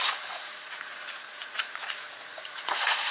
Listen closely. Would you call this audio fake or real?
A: fake